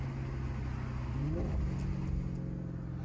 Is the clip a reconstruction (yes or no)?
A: no